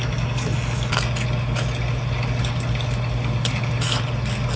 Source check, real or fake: real